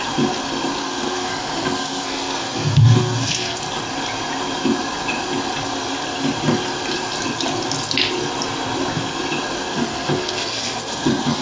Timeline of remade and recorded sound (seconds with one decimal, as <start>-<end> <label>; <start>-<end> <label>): 0.0-0.8 recorded; 0.8-3.6 remade; 3.6-9.7 recorded; 9.7-11.4 remade